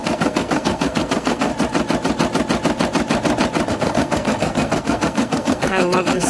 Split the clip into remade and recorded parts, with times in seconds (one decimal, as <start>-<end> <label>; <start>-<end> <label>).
0.0-1.5 remade; 1.5-3.7 recorded; 3.7-6.3 remade